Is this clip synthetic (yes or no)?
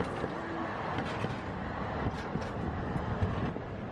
no